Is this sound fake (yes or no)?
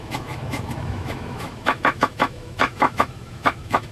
yes